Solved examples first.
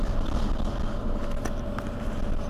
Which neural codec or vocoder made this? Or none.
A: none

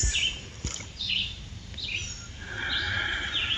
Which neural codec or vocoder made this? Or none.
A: none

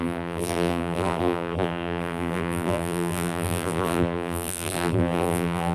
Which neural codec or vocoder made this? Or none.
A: vocoder, BigVGAN v2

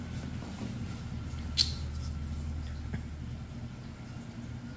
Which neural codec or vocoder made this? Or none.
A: none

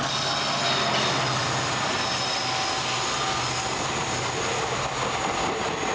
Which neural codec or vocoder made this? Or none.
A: none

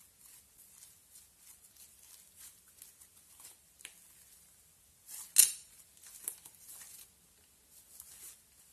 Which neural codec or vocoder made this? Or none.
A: none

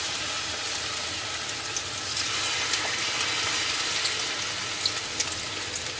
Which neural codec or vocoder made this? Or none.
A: none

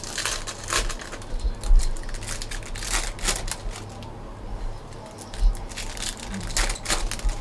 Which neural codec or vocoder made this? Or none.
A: none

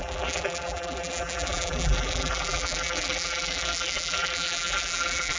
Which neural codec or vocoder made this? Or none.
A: vocoder, BigVGAN v2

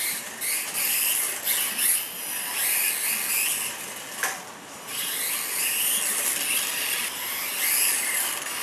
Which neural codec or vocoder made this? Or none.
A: none